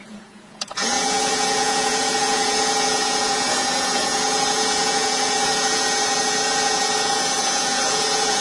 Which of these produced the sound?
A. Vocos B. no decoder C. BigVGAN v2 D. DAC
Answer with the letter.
A